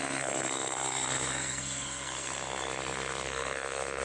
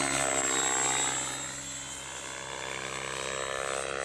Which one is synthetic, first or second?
first